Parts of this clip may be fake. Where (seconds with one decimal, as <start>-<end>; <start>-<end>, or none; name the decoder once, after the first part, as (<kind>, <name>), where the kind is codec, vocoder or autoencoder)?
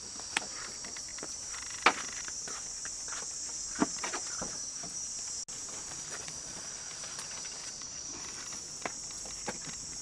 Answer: 6.2-6.7 (vocoder, Vocos); 7.6-8.2